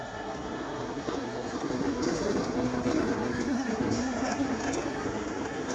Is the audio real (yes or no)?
no